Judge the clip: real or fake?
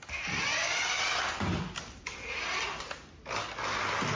real